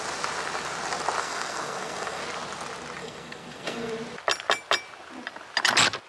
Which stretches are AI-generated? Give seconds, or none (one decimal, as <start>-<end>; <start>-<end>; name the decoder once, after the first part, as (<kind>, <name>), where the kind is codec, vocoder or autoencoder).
1.2-2.2 (codec, SNAC); 3.0-3.9